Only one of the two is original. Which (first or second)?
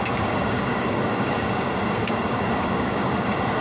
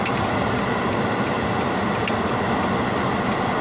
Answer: second